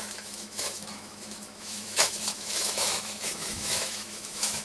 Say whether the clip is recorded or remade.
remade